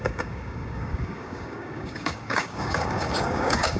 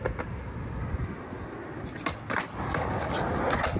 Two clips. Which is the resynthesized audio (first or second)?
first